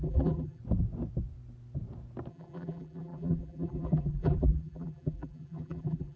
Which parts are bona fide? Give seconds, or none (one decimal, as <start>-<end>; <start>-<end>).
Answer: 0.6-2.3

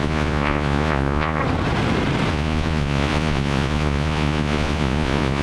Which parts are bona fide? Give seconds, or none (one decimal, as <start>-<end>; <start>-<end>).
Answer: 1.4-2.3